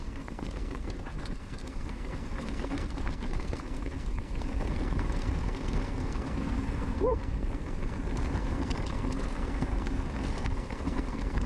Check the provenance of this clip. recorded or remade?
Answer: remade